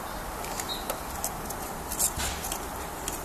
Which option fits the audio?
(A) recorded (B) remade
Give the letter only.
A